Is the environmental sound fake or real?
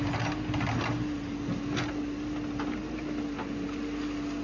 real